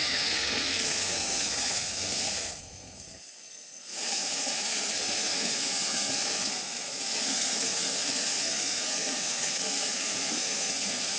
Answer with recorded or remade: remade